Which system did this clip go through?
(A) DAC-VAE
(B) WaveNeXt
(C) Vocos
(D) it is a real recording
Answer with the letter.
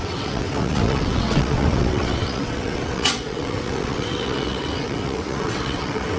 B